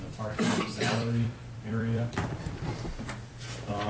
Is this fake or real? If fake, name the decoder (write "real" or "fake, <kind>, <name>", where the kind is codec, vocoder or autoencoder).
fake, vocoder, BigVGAN v2